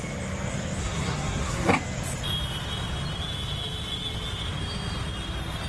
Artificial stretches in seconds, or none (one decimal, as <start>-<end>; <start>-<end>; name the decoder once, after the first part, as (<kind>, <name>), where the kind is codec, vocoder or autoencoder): 0.8-1.7 (codec, SNAC)